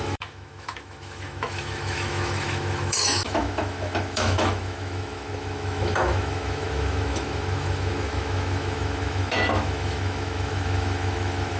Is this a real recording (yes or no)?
no